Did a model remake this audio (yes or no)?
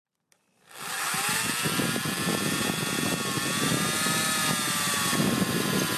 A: no